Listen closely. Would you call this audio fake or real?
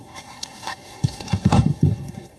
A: fake